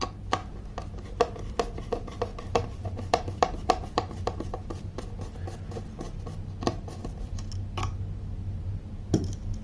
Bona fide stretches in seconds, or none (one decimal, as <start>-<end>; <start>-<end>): 0.0-2.3; 5.0-9.6